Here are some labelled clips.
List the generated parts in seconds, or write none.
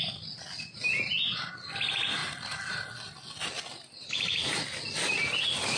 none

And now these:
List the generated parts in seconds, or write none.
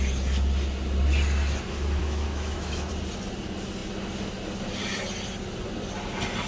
2.0-2.9 (autoencoder, DAC-VAE)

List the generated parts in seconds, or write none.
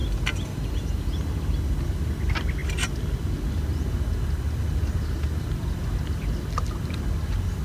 none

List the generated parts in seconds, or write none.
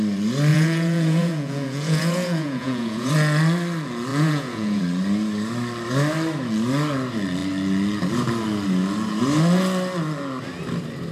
0.5-3.1 (vocoder, Vocos); 4.1-4.8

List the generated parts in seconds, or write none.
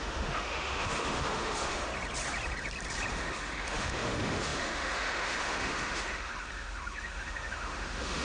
0.0-1.9 (autoencoder, DAC-VAE); 3.1-8.2